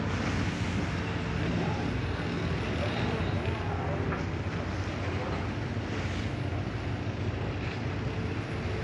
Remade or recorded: recorded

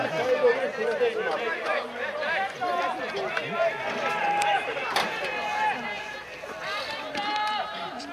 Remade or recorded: recorded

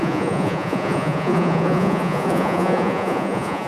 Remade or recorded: remade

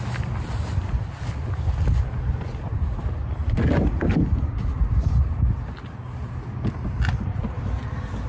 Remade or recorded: recorded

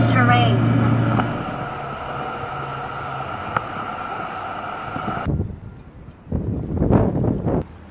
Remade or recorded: recorded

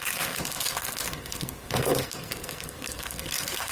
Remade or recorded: remade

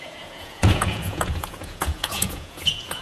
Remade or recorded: remade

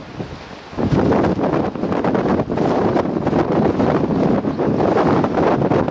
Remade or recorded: recorded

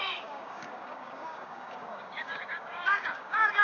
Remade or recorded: remade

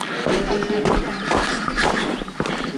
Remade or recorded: recorded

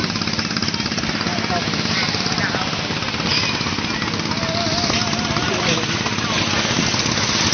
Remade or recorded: recorded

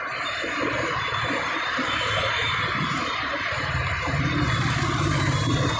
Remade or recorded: remade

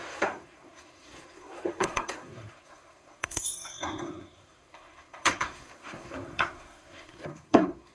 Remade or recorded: remade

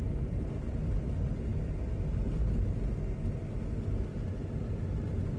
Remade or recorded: recorded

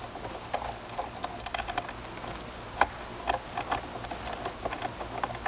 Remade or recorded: recorded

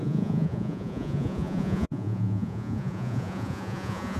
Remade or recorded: remade